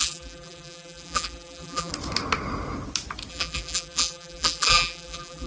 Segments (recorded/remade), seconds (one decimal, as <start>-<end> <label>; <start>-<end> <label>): 0.0-1.9 remade; 1.9-3.3 recorded; 3.3-5.5 remade